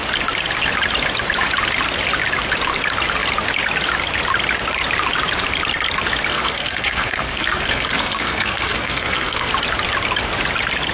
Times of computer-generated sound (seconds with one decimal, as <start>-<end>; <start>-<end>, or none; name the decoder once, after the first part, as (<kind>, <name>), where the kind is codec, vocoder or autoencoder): 6.3-9.5 (codec, SNAC)